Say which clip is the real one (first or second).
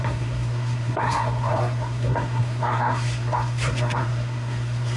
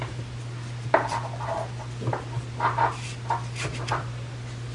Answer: second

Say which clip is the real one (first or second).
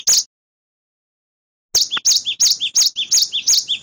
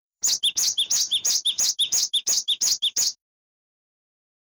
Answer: first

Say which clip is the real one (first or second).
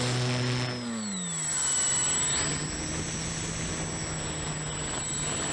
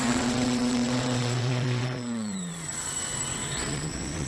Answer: first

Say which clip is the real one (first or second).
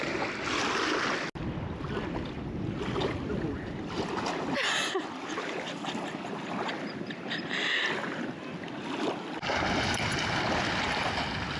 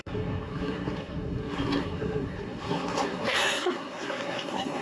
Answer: first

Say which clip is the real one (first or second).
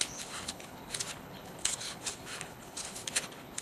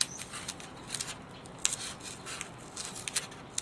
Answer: second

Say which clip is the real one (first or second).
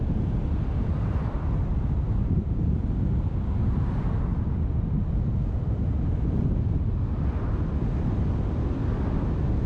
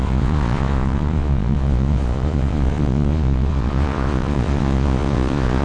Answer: first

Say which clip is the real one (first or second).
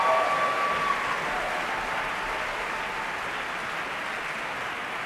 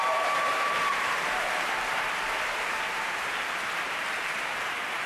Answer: first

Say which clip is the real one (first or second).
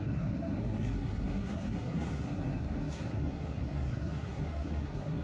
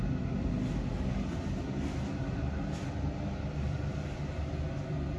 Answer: second